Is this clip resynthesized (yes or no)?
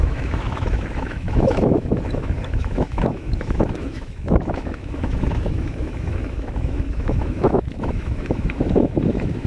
yes